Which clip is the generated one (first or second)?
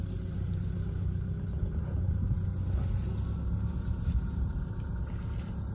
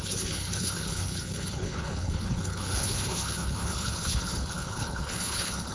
second